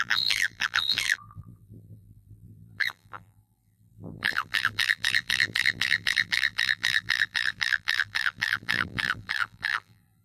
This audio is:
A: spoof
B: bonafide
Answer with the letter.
A